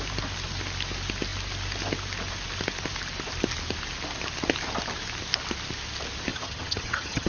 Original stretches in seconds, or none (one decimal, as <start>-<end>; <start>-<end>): 0.0-6.3